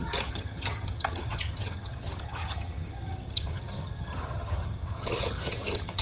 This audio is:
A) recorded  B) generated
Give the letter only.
B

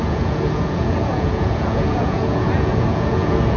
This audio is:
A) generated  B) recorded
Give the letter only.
A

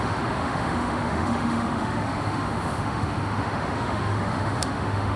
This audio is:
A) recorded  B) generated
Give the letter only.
B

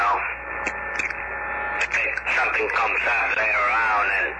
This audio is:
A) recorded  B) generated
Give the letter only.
A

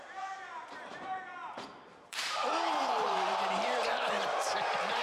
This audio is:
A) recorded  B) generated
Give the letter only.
B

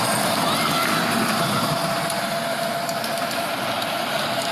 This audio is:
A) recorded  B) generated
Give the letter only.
A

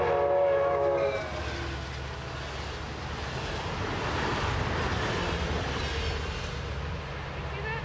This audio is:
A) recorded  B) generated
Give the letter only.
A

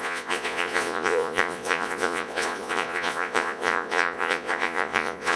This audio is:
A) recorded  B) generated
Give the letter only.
B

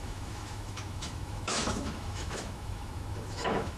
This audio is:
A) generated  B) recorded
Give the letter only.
A